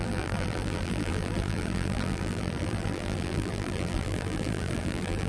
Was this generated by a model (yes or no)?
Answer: yes